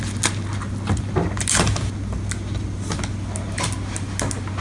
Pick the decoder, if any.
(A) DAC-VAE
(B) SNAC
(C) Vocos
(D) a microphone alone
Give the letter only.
D